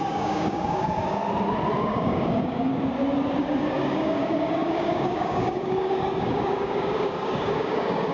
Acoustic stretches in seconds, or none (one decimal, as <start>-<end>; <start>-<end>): 1.2-1.8; 2.7-3.4